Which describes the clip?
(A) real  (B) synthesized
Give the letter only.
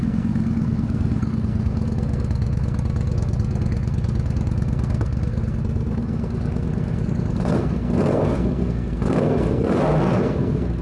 B